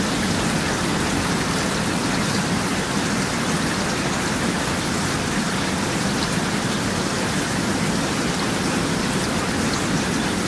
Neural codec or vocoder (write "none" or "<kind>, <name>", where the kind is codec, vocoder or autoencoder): none